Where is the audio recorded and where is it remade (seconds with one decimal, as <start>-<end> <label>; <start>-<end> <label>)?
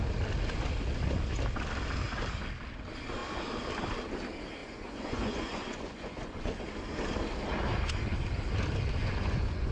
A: 0.0-4.6 recorded; 4.6-6.6 remade; 6.6-9.0 recorded; 9.0-9.7 remade